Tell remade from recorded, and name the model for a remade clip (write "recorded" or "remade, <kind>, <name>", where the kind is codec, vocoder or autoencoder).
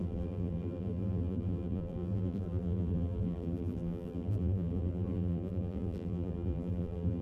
remade, vocoder, BigVGAN v2